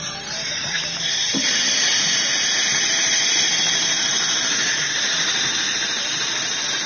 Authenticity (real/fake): fake